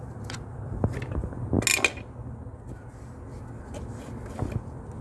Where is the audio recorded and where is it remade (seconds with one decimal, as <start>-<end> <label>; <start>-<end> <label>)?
0.0-5.0 recorded